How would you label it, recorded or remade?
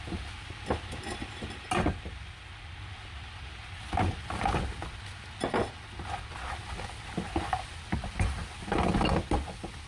recorded